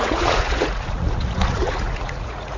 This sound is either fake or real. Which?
fake